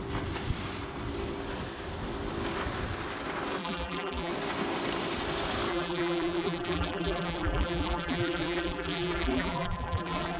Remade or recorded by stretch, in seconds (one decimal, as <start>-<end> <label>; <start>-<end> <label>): 0.0-3.6 recorded; 3.6-4.3 remade; 4.3-5.7 recorded; 5.7-10.4 remade